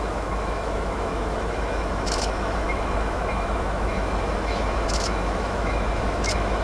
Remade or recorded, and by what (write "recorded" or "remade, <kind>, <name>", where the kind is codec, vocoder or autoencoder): remade, autoencoder, DAC-VAE